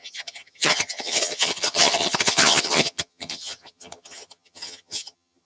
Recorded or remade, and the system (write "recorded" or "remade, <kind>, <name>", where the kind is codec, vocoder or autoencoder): remade, vocoder, HiFi-GAN